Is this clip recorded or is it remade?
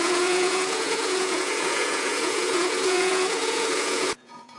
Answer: remade